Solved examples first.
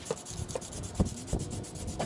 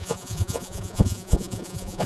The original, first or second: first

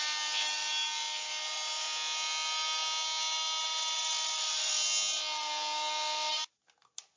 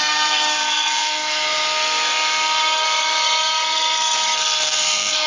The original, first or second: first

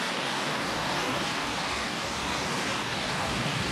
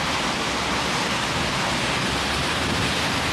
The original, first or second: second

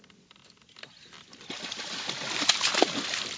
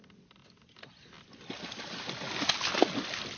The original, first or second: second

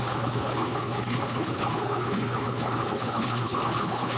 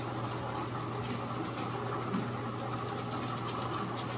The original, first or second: second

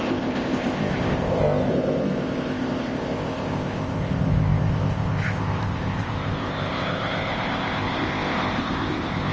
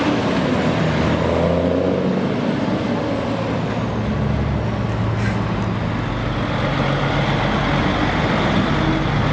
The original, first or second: second